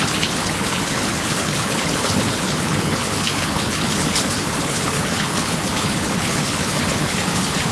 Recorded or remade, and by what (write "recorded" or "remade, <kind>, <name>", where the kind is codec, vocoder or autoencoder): remade, codec, HILCodec